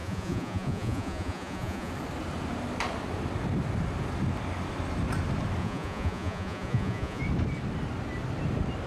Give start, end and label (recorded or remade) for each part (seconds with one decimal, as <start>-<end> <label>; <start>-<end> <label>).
0.0-1.9 remade; 1.9-5.6 recorded; 5.6-7.2 remade; 7.2-8.9 recorded